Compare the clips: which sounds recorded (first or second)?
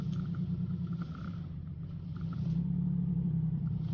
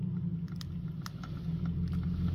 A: second